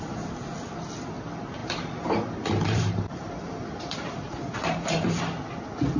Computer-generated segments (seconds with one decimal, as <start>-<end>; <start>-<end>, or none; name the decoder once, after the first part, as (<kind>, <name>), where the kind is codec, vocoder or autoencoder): 1.6-5.2 (vocoder, BigVGAN v2)